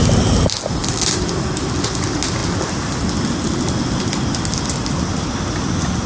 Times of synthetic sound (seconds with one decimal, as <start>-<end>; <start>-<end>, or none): none